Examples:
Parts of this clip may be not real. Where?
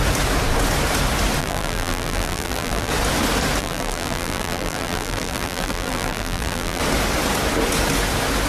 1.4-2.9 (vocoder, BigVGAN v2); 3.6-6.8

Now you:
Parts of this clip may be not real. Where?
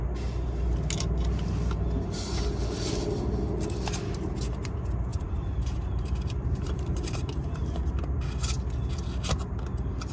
5.1-7.9 (vocoder, BigVGAN v2)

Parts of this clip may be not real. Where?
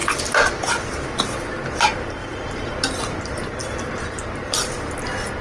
2.2-2.7 (vocoder, BigVGAN v2); 3.6-4.7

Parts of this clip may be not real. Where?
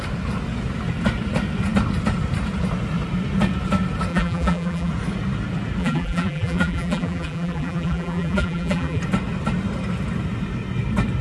4.1-4.9 (vocoder, BigVGAN v2); 5.8-9.0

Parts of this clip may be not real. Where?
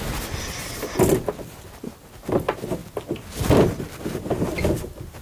none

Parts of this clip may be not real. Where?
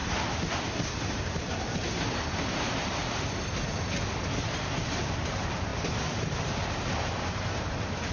0.5-3.0 (vocoder, BigVGAN v2); 4.1-5.7; 7.0-8.1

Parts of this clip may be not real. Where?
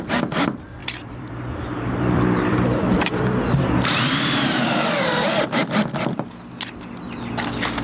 0.8-5.5 (vocoder, BigVGAN v2)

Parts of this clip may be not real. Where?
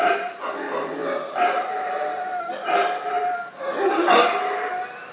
1.0-2.5 (vocoder, BigVGAN v2)